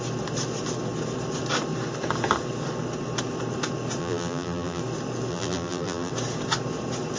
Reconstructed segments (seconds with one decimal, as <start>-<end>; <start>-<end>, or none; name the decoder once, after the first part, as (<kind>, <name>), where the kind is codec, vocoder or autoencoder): 4.0-4.8 (vocoder, BigVGAN v2); 5.3-6.1